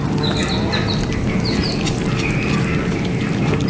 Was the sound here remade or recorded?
recorded